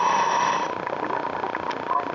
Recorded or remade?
recorded